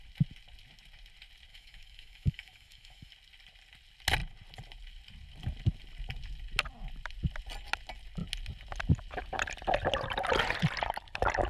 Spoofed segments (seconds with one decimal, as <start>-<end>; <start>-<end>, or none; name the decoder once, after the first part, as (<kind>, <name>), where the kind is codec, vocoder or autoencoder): 1.5-3.1 (autoencoder, DAC-VAE)

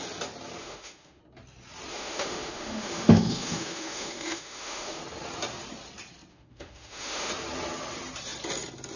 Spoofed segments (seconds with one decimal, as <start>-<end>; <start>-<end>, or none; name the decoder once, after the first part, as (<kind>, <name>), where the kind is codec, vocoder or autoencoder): 0.6-1.2 (autoencoder, DAC-VAE); 1.9-5.0; 6.3-7.3

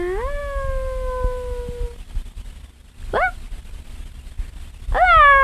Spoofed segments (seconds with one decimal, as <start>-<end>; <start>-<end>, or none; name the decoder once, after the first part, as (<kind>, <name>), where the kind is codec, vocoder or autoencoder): none

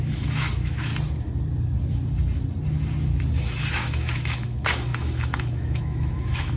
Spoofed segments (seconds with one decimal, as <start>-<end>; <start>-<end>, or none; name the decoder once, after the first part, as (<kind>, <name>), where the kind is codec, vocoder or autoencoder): 0.0-0.9 (autoencoder, DAC-VAE); 3.7-6.6

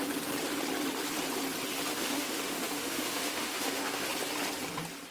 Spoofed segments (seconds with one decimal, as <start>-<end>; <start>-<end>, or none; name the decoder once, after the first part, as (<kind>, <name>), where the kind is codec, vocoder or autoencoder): 1.9-4.1 (autoencoder, DAC-VAE)

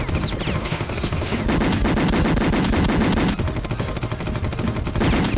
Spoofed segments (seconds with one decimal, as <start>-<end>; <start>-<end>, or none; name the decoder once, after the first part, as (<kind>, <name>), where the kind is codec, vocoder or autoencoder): 0.6-1.4 (autoencoder, DAC-VAE)